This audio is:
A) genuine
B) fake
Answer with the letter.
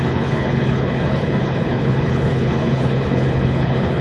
B